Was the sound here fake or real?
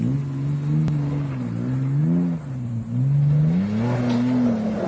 real